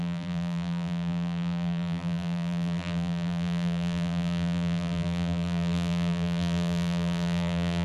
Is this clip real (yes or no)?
no